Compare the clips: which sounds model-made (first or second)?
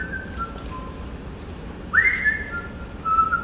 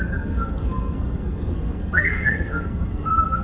second